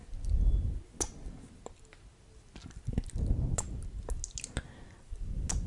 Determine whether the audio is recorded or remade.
recorded